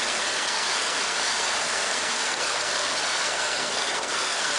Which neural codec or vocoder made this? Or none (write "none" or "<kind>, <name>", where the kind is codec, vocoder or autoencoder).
codec, SNAC